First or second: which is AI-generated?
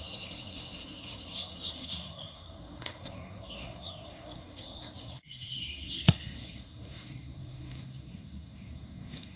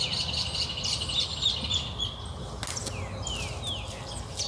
first